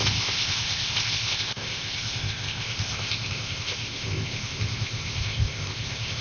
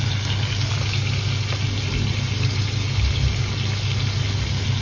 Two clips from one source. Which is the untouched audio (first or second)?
second